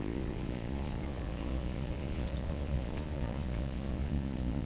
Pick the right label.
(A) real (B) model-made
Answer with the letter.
B